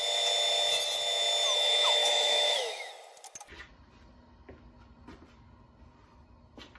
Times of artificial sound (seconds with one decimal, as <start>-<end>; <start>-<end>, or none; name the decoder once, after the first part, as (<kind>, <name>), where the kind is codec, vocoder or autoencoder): 2.0-2.9 (autoencoder, DAC-VAE)

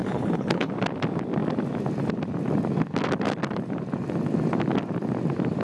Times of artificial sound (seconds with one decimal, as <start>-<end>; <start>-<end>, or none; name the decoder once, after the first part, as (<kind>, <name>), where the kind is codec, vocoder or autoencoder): 0.0-0.7 (codec, HILCodec)

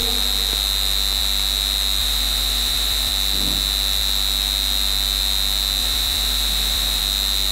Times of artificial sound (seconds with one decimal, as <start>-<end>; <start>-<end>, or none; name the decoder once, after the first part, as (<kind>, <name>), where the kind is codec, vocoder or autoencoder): 2.0-3.1 (vocoder, BigVGAN v2); 5.8-7.0

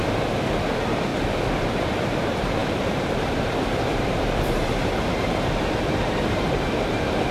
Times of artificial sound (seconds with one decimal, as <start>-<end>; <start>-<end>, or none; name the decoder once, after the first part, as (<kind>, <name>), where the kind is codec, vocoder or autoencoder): 0.0-1.1 (vocoder, BigVGAN v2); 1.6-7.3

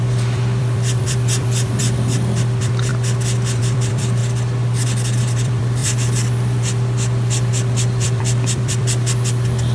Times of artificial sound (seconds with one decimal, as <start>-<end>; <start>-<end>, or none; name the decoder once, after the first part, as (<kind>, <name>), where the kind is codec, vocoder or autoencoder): 0.0-2.9 (vocoder, BigVGAN v2); 3.6-4.2; 5.2-9.7